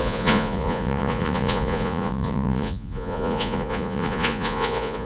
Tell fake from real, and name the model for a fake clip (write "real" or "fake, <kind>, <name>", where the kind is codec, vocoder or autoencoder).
fake, vocoder, Vocos